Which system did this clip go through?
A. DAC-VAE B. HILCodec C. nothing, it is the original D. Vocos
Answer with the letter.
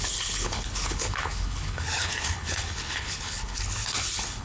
B